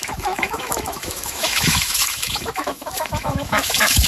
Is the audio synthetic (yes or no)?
yes